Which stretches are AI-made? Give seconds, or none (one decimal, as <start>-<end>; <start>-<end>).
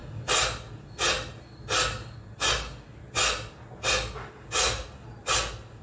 none